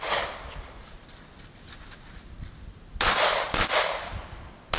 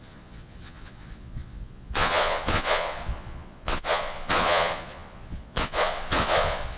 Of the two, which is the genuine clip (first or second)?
first